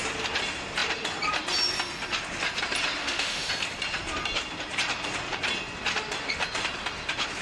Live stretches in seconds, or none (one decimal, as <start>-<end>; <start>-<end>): 0.0-3.0; 3.5-7.4